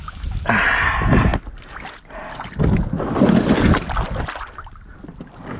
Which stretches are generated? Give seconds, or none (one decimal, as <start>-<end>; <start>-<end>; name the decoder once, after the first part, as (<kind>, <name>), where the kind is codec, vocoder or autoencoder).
none